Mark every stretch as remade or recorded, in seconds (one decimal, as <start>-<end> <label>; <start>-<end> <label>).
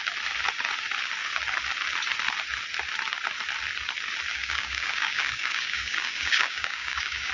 0.0-4.3 recorded; 4.3-7.3 remade